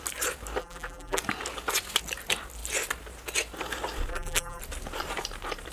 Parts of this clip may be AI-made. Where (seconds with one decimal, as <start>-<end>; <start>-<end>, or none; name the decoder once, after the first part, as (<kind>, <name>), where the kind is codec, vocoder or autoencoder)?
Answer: 0.6-1.2 (vocoder, BigVGAN v2); 4.1-4.6